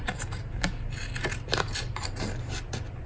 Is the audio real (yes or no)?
yes